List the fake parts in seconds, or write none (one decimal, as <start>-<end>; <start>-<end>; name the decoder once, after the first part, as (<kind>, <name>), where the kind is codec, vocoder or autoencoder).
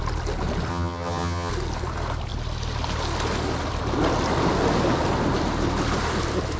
0.7-1.5 (vocoder, HiFi-GAN)